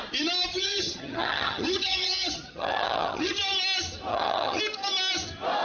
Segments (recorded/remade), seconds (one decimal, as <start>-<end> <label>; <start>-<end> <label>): 0.0-0.5 recorded; 0.5-3.3 remade; 3.3-4.1 recorded; 4.1-4.6 remade; 4.6-5.6 recorded